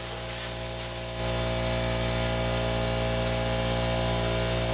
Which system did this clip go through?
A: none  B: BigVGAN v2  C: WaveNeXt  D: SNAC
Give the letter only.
A